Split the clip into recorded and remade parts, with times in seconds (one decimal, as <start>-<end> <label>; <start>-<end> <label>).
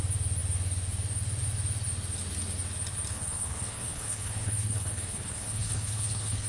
0.0-3.1 recorded; 3.1-6.5 remade